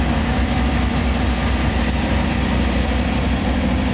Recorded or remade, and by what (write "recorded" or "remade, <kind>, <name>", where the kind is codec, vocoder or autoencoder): remade, vocoder, BigVGAN v2